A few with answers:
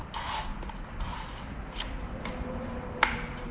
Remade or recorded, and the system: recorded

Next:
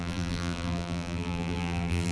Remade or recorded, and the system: remade, vocoder, BigVGAN v2